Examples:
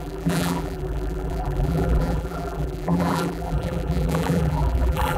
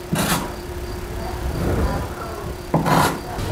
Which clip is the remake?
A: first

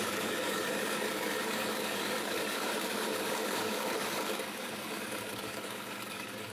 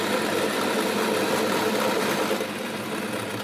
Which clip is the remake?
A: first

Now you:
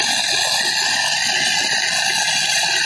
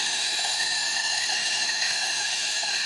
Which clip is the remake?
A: second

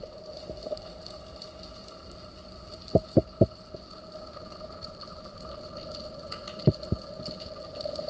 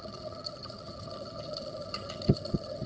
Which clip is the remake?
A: second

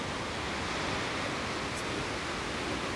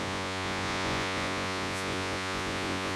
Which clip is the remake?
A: second